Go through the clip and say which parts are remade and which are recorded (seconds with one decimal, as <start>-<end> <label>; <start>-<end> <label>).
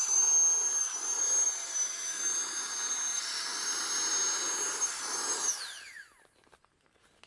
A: 0.0-7.3 recorded